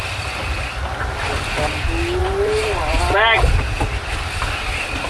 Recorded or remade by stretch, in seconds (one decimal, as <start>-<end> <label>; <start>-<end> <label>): 0.0-2.2 recorded; 2.2-3.0 remade; 3.0-5.1 recorded